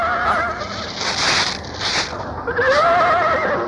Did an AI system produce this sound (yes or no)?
no